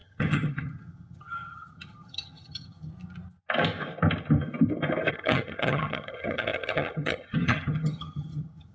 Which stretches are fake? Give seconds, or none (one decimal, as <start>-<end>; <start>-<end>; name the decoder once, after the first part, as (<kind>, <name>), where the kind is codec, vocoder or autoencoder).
0.0-2.9 (vocoder, HiFi-GAN); 5.1-8.7